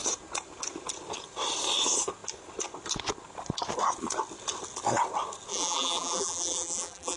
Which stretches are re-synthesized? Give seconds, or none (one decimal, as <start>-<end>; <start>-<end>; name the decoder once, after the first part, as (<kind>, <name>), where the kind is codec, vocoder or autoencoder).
5.5-7.2 (vocoder, BigVGAN v2)